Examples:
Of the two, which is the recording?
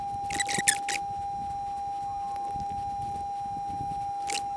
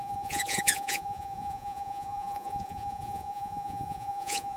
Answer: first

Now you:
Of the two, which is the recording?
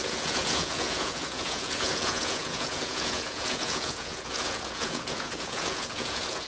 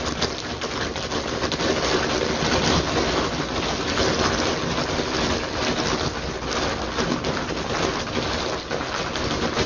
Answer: second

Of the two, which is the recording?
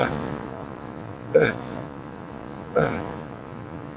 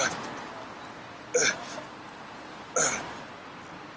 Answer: second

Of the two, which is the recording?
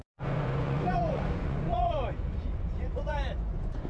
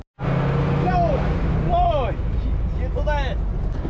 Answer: second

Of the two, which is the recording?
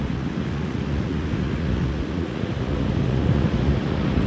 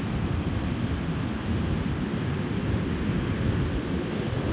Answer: second